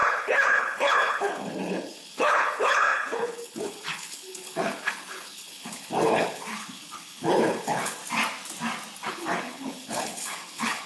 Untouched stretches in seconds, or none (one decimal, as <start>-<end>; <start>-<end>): 8.0-9.1